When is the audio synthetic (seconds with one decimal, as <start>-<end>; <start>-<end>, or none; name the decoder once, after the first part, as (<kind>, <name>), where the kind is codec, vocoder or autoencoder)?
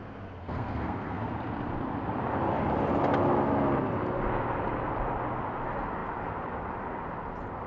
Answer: 0.4-1.3 (codec, SNAC)